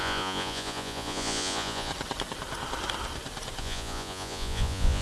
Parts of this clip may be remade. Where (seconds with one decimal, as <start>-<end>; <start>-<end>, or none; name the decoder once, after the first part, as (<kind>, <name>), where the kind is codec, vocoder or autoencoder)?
0.0-1.9 (vocoder, Vocos); 3.6-5.0